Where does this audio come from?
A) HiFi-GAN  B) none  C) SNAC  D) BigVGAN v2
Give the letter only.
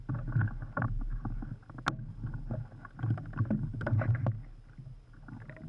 B